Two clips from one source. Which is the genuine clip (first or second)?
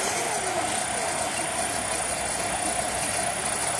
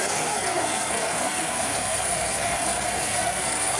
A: first